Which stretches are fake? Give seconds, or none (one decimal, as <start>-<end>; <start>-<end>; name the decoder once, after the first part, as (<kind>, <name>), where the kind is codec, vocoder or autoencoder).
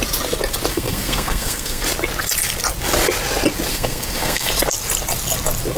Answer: 0.7-1.8 (codec, SNAC); 3.7-4.5